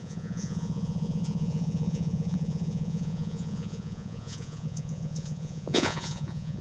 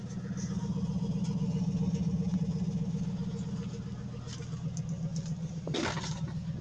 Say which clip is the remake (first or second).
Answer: first